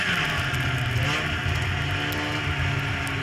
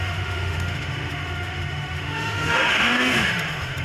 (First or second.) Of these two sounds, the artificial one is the second